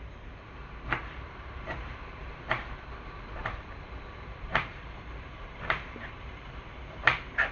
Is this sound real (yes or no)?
no